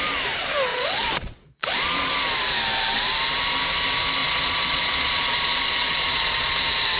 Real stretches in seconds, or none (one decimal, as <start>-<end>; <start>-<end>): 0.0-0.7; 2.1-4.2; 6.6-7.0